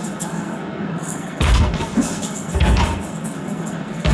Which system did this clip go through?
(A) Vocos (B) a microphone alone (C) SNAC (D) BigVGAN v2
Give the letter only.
C